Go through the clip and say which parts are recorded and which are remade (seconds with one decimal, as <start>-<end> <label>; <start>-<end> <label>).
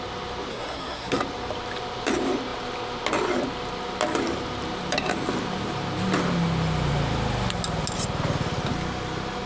0.0-0.5 recorded; 0.5-1.2 remade; 1.2-9.5 recorded